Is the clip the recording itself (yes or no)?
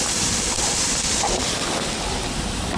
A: no